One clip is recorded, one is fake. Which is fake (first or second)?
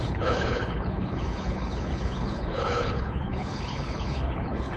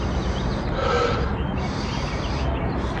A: first